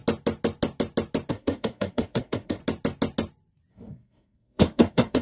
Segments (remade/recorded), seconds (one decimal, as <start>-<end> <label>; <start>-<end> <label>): 0.0-1.3 recorded; 1.3-2.6 remade; 2.6-3.7 recorded; 3.7-5.2 remade